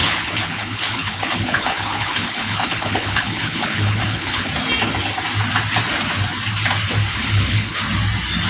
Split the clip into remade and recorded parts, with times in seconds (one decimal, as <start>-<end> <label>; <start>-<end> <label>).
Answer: 0.0-4.5 remade; 4.5-7.1 recorded; 7.1-7.8 remade; 7.8-8.5 recorded